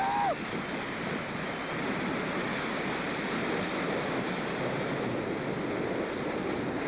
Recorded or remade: recorded